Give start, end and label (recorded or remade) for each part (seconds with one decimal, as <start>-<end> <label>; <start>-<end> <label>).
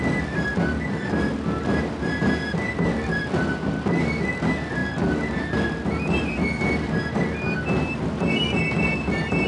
0.0-9.5 recorded